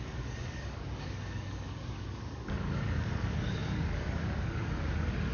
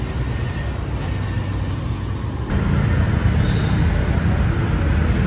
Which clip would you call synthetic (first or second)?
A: first